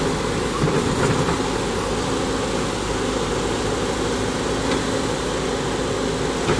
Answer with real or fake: real